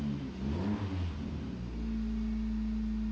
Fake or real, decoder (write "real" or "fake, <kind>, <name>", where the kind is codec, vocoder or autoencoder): real